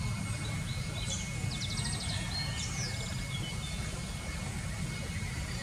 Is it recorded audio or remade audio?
recorded